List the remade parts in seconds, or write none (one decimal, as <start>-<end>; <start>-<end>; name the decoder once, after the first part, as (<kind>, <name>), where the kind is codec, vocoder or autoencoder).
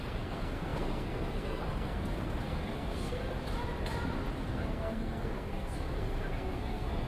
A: 0.0-3.2 (codec, SNAC); 4.3-7.1